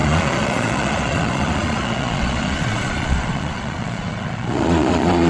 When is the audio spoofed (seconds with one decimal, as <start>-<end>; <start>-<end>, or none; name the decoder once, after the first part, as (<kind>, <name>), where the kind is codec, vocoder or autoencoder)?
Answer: 0.0-5.3 (vocoder, Vocos)